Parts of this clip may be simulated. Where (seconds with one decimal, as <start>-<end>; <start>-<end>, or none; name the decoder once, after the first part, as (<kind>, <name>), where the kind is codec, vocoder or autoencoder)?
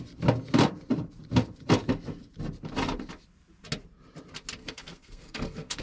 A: 4.6-5.8 (codec, SNAC)